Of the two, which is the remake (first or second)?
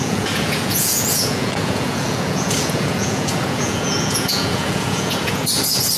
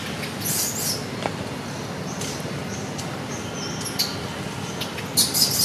first